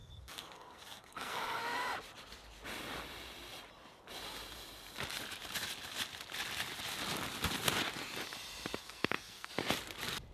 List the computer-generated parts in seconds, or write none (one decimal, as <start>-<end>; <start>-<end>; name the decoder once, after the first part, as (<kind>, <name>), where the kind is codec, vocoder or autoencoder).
0.0-1.6 (codec, SNAC); 8.8-9.5